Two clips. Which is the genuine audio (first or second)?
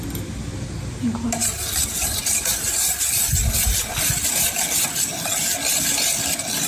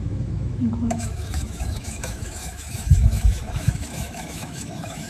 first